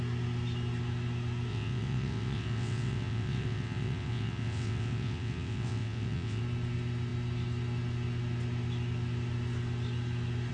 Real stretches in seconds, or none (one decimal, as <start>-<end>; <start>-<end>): 0.0-1.5; 6.4-10.5